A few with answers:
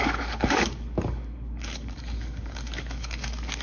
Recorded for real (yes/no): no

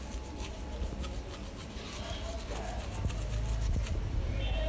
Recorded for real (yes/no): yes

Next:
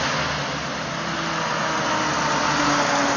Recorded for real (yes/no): yes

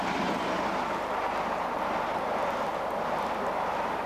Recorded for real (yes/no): yes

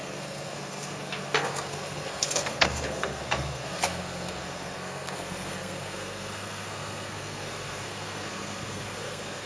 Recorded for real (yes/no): no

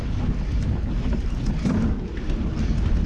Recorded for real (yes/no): yes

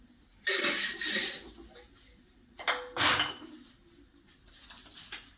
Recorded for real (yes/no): yes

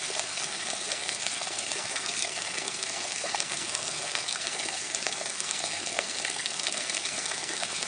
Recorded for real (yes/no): no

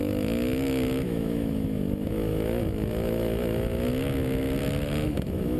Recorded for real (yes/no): no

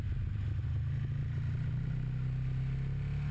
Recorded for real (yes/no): yes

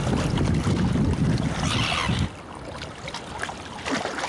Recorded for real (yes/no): yes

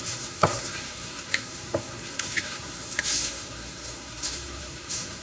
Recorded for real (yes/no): no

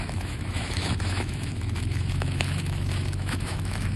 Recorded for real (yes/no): no